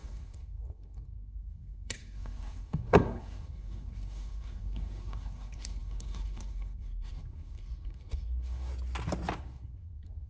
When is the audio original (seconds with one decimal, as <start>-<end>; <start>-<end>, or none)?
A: 8.7-9.4